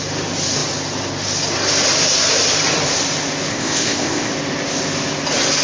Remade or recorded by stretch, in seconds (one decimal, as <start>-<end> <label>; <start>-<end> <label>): 0.0-3.5 recorded; 3.5-4.3 remade; 4.3-5.6 recorded